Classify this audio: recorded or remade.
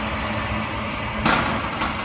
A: recorded